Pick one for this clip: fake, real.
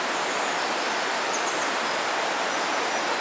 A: real